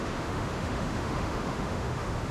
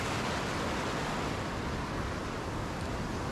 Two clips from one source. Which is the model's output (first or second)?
first